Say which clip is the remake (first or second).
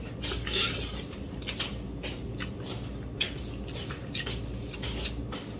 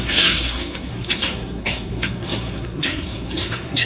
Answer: second